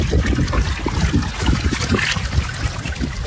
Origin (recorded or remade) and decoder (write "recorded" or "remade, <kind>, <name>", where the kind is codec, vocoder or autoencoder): recorded